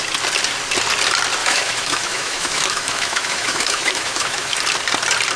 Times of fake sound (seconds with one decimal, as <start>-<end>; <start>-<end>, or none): 1.4-4.6